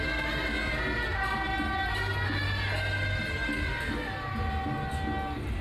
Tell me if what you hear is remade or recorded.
recorded